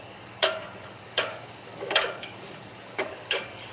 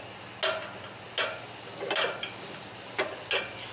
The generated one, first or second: first